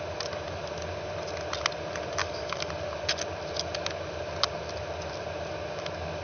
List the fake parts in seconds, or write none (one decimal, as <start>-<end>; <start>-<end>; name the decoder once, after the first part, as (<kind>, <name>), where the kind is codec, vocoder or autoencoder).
2.2-2.7 (codec, DAC)